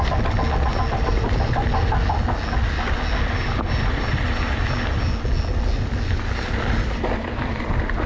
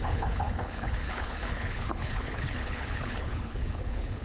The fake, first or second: second